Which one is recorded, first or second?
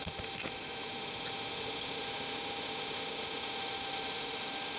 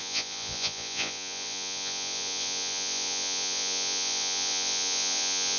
first